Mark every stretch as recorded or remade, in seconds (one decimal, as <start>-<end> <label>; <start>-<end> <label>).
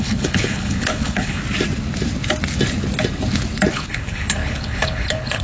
0.0-1.4 remade; 1.4-3.7 recorded; 3.7-5.4 remade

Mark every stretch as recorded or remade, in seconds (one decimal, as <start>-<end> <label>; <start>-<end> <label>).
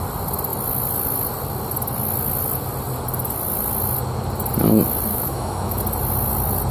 0.0-5.1 recorded; 5.1-5.8 remade; 5.8-6.7 recorded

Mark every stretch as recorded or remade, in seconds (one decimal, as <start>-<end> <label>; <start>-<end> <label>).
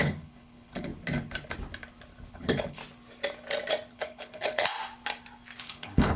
0.0-0.9 remade; 0.9-2.3 recorded; 2.3-2.8 remade; 2.8-3.9 recorded; 3.9-4.7 remade; 4.7-5.6 recorded; 5.6-6.2 remade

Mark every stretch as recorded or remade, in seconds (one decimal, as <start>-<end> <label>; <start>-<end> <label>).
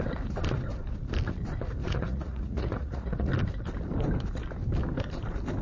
0.0-1.8 recorded; 1.8-3.3 remade; 3.3-5.6 recorded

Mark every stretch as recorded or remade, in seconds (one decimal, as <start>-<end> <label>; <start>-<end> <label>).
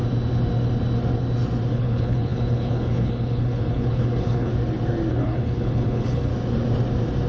0.0-1.7 recorded; 1.7-4.5 remade; 4.5-5.1 recorded; 5.1-6.3 remade; 6.3-7.3 recorded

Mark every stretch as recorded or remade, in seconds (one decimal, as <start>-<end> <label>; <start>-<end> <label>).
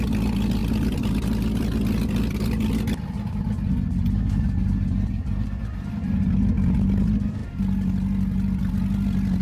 0.0-0.6 recorded; 0.6-2.7 remade; 2.7-9.4 recorded